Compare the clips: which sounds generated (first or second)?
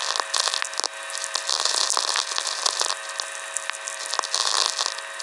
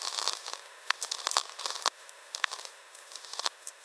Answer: second